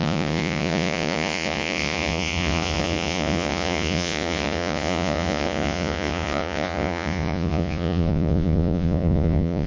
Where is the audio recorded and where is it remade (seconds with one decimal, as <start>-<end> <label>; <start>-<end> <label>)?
0.0-9.7 remade